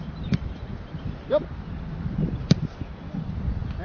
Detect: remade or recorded remade